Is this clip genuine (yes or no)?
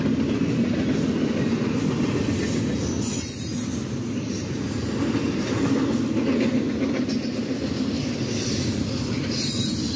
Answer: yes